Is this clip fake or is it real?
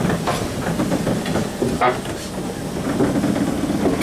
real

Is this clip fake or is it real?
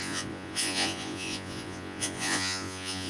fake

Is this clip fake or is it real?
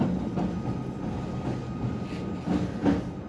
real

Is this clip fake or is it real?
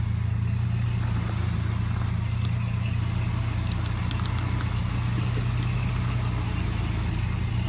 real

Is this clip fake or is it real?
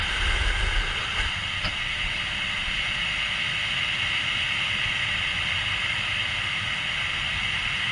real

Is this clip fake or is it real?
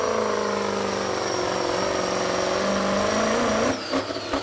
real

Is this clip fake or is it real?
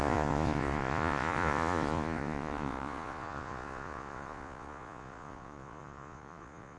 fake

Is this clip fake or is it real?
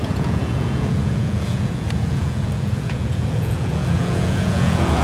fake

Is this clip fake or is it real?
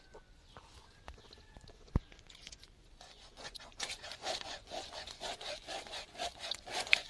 fake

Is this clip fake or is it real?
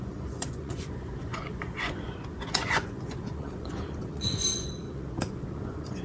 fake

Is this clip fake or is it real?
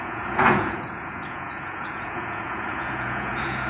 fake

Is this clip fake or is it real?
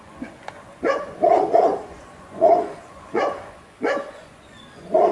fake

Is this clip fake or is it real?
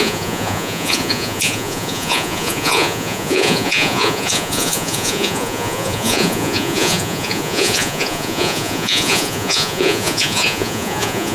fake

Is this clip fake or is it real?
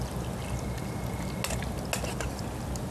real